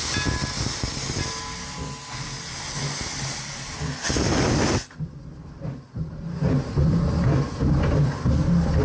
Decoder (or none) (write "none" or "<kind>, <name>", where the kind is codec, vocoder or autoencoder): none